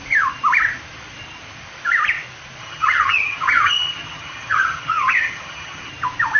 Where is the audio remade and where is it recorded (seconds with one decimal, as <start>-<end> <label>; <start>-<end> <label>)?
0.0-2.6 recorded; 2.6-5.9 remade; 5.9-6.4 recorded